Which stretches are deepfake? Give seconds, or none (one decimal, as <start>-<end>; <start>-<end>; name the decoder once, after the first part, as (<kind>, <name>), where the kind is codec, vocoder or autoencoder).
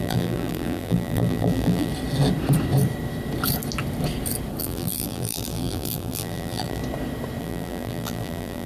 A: 0.0-1.9 (vocoder, BigVGAN v2); 4.6-6.8; 7.4-8.7